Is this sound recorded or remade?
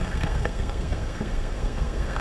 remade